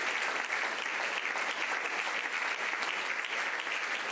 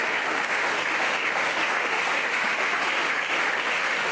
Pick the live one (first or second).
first